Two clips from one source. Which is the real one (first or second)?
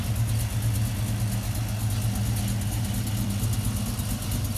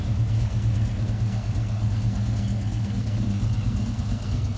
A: first